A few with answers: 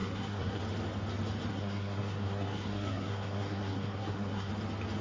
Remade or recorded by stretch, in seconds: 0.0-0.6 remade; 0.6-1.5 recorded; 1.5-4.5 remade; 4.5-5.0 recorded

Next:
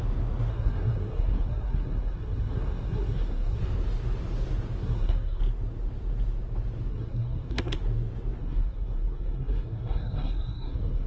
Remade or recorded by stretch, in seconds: 0.0-0.5 recorded; 0.5-3.6 remade; 3.6-4.8 recorded; 4.8-5.4 remade; 5.4-6.9 recorded; 6.9-7.8 remade; 7.8-8.4 recorded; 8.4-11.1 remade

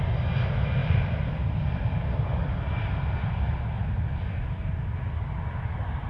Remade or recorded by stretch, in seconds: 0.0-6.1 recorded

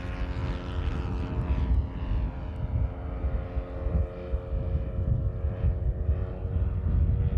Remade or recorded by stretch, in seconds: 0.0-7.4 recorded

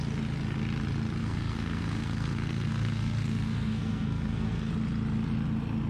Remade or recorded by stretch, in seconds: 0.0-1.2 recorded; 1.2-4.7 remade; 4.7-5.9 recorded

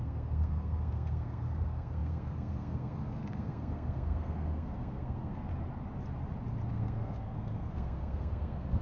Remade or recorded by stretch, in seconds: 0.0-5.5 remade; 5.5-6.7 recorded; 6.7-8.8 remade